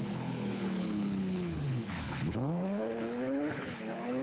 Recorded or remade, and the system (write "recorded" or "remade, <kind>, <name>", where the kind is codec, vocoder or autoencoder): remade, codec, HILCodec